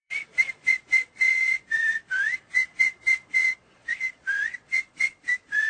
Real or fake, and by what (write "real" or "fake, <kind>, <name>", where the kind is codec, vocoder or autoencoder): fake, vocoder, Vocos